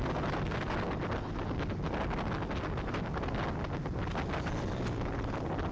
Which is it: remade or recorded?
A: recorded